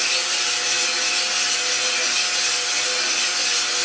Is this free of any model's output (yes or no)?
yes